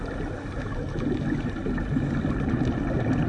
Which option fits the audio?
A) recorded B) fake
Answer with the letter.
A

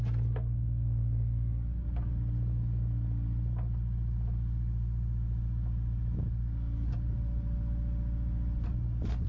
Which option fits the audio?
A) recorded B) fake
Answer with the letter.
A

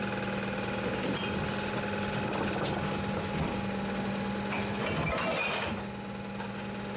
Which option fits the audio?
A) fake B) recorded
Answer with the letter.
B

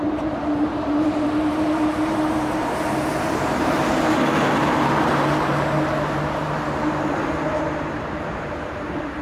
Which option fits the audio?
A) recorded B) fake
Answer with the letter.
B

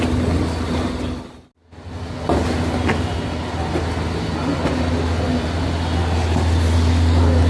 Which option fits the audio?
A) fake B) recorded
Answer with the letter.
B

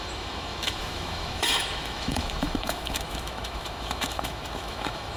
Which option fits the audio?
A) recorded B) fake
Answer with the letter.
B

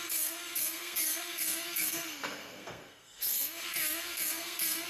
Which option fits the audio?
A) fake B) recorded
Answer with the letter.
A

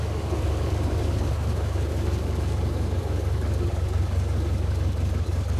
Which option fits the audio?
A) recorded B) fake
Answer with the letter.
B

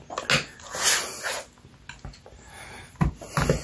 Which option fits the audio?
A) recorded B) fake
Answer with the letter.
A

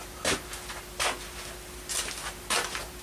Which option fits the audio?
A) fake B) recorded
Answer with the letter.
B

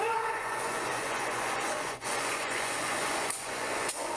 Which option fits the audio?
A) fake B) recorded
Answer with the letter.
A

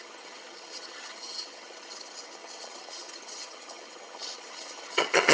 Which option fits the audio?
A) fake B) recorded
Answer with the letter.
A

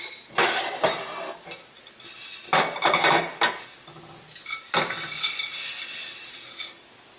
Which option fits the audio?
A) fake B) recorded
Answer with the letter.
B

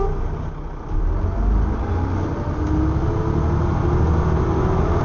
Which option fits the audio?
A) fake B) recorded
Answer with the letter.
B